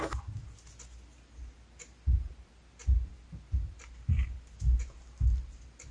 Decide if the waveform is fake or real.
real